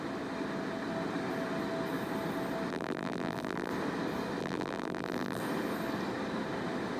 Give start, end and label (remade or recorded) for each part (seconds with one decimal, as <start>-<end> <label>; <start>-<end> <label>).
0.0-2.7 recorded; 2.7-3.7 remade; 3.7-4.4 recorded; 4.4-5.4 remade; 5.4-7.0 recorded